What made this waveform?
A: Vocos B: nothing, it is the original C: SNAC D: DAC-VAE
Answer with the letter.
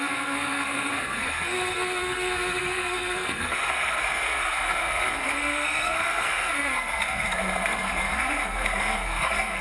C